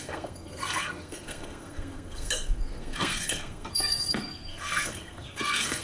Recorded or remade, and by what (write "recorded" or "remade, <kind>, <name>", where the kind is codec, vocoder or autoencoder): remade, codec, SNAC